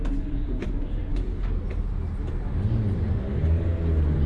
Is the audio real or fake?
real